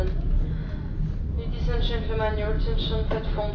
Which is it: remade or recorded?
recorded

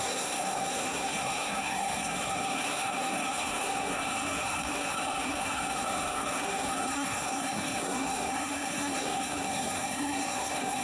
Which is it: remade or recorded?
remade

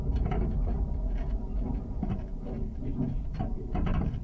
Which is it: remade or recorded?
remade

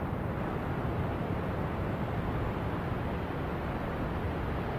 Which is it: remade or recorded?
recorded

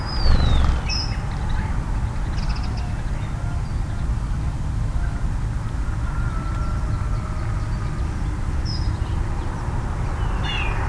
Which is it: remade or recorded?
recorded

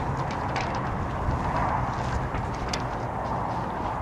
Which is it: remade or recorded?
recorded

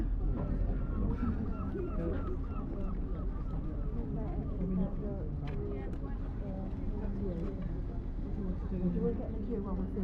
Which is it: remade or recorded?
recorded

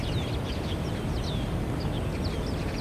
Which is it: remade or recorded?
recorded